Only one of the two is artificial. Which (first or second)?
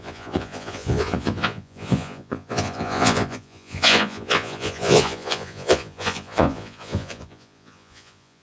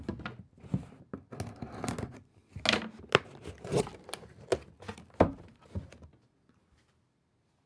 first